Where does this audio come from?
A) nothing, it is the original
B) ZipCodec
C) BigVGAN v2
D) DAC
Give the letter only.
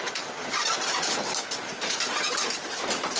A